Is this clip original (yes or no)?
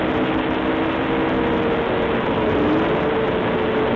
yes